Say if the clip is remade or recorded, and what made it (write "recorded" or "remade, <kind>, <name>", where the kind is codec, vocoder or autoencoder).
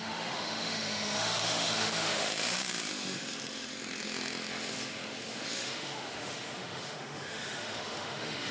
remade, autoencoder, DAC-VAE